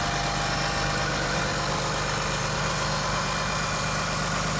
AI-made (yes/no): no